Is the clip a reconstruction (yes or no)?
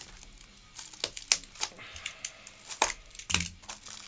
no